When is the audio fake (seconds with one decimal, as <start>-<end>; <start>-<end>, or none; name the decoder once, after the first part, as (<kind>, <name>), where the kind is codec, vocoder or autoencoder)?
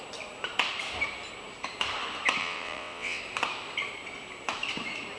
2.4-3.2 (vocoder, WaveNeXt)